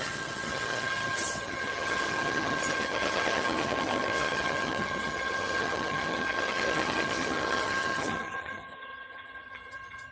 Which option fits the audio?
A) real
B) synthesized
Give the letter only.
B